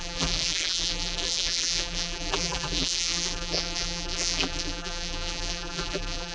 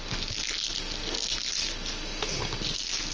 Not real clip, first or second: first